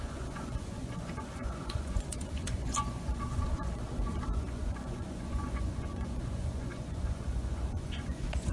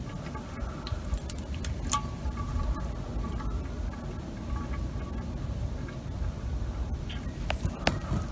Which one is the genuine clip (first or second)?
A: second